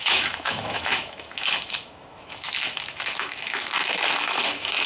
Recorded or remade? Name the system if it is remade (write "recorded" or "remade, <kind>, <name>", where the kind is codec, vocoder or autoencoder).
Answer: remade, autoencoder, DAC-VAE